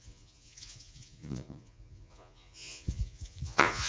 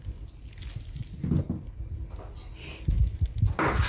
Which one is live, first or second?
second